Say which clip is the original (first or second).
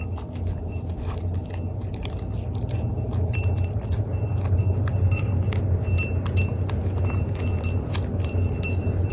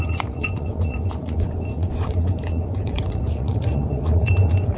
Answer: first